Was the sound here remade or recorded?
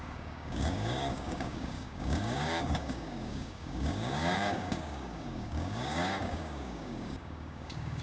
remade